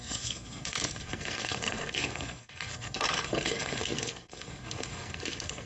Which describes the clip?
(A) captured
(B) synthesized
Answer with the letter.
B